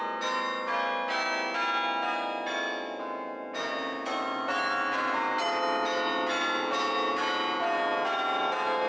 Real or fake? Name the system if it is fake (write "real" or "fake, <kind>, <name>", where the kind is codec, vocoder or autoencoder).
real